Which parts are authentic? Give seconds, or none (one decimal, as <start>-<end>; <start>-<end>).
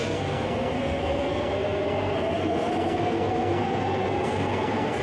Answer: none